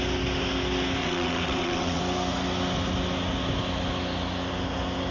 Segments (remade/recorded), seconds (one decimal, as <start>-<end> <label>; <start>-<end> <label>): 0.0-1.0 recorded; 1.0-2.0 remade; 2.0-5.1 recorded